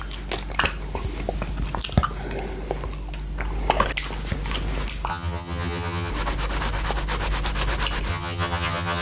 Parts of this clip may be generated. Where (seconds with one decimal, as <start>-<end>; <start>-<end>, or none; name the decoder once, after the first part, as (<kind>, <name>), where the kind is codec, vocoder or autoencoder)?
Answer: 5.1-6.1 (vocoder, HiFi-GAN); 8.1-9.0